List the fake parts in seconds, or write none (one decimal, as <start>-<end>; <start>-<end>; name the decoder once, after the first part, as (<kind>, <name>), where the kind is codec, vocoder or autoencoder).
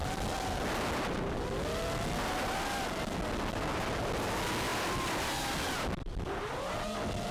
4.7-6.7 (vocoder, BigVGAN v2)